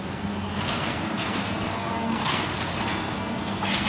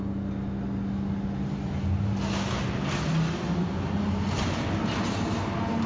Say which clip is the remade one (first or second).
first